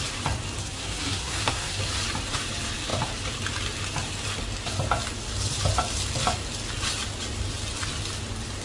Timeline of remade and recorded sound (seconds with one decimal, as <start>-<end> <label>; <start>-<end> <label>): 0.0-0.6 recorded; 0.6-1.8 remade; 1.8-8.6 recorded